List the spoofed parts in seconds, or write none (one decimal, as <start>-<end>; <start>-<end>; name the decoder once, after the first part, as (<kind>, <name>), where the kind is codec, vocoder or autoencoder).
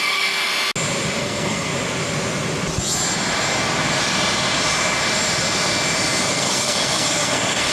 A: 0.0-0.5 (codec, SNAC); 1.2-1.7; 6.3-7.7